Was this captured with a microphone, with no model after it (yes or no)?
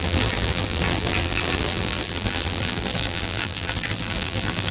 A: no